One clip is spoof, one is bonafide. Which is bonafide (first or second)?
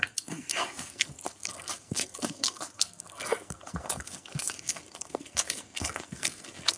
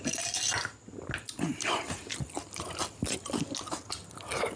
second